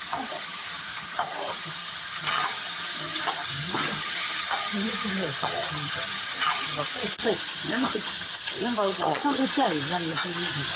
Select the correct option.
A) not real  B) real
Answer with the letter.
A